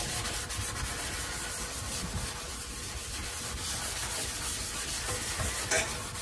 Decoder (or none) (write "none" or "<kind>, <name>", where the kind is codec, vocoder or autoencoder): vocoder, BigVGAN v2